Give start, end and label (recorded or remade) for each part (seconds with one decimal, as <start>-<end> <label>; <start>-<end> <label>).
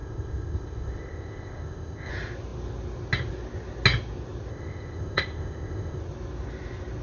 0.0-2.1 remade; 2.1-4.5 recorded; 4.5-6.0 remade; 6.0-7.0 recorded